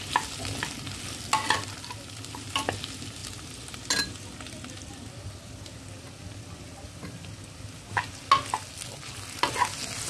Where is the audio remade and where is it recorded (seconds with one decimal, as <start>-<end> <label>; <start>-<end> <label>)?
0.0-10.1 recorded